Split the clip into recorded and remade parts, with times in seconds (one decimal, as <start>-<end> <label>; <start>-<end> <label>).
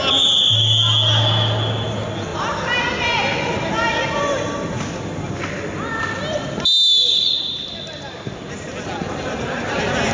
0.0-10.1 recorded